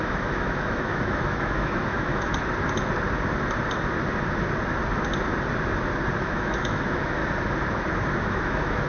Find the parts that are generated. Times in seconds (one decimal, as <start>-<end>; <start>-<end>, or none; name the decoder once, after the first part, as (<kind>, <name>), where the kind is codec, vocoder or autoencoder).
0.0-2.3 (autoencoder, DAC-VAE); 6.2-7.2; 8.2-8.9